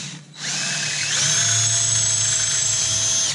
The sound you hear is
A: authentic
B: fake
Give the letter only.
A